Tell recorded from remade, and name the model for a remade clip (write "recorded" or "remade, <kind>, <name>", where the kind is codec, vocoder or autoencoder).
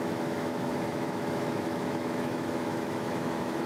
remade, autoencoder, DAC-VAE